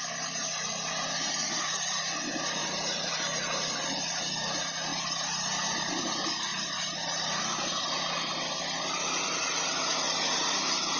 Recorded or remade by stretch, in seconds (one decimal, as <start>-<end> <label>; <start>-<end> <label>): 0.0-1.4 recorded; 1.4-2.0 remade; 2.0-2.6 recorded; 2.6-3.8 remade; 3.8-4.9 recorded; 4.9-5.9 remade; 5.9-6.5 recorded; 6.5-7.4 remade; 7.4-11.0 recorded